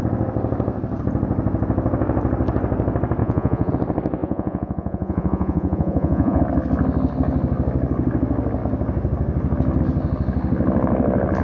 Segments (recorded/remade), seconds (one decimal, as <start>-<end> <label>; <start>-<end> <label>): 0.0-3.2 recorded; 3.2-3.7 remade; 3.7-4.2 recorded; 4.2-6.4 remade; 6.4-11.4 recorded